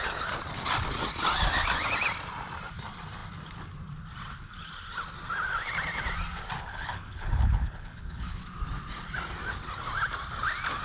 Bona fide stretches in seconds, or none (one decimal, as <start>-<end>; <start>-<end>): 0.0-6.7; 8.4-10.8